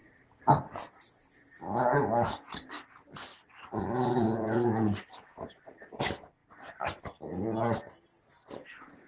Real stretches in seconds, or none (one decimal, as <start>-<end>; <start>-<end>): 0.5-3.3; 6.0-9.1